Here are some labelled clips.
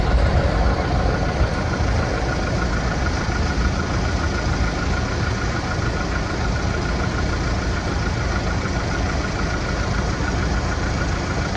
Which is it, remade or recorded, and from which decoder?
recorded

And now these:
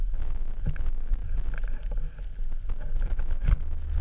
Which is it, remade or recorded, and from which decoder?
recorded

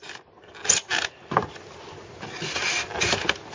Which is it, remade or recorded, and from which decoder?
recorded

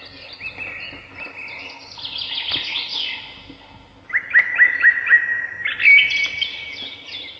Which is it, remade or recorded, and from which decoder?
recorded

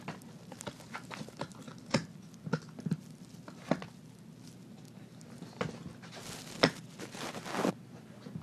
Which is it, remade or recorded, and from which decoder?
recorded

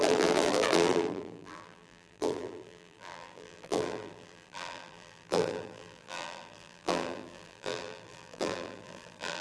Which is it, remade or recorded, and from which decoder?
remade, vocoder, BigVGAN v2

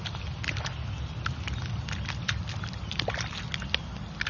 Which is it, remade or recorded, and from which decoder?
recorded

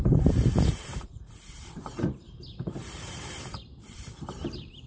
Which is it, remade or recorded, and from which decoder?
remade, vocoder, BigVGAN v2